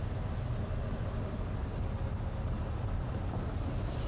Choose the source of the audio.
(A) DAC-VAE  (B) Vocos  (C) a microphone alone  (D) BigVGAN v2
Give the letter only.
C